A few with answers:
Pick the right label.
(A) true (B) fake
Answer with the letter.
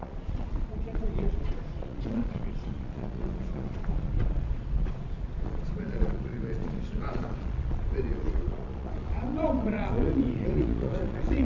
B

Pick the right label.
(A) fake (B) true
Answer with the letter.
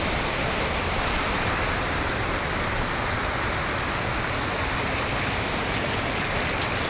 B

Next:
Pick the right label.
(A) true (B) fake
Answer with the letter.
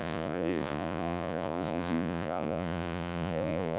B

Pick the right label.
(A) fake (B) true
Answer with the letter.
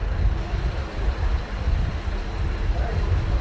B